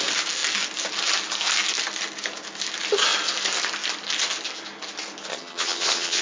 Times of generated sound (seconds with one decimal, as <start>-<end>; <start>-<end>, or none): 5.3-6.2